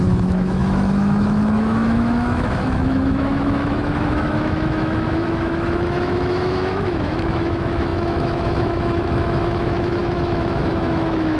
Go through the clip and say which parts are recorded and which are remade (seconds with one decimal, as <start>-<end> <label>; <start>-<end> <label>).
0.0-11.4 remade